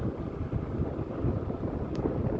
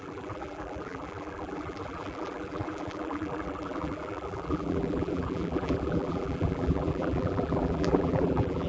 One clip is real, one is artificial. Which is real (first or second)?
first